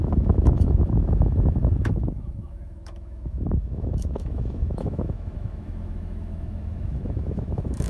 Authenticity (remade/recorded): remade